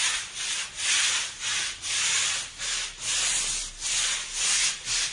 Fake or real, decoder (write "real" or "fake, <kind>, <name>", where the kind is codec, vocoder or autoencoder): real